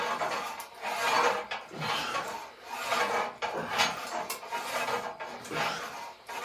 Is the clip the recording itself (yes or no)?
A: yes